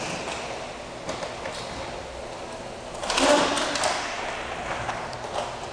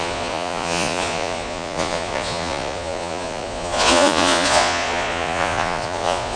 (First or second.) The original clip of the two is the first